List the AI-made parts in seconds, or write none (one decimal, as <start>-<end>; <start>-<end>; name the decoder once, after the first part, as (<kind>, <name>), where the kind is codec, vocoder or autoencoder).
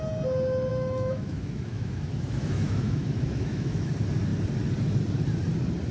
0.7-3.9 (autoencoder, DAC-VAE)